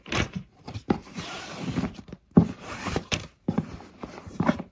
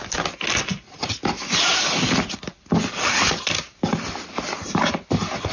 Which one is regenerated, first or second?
first